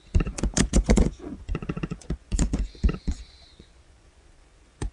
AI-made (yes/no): yes